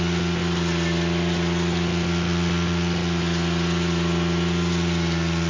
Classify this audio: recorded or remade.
recorded